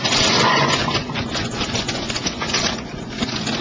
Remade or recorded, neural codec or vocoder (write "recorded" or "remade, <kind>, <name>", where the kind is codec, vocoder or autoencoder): remade, vocoder, Vocos